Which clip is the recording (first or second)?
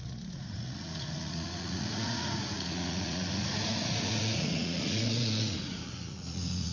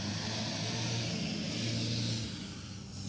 second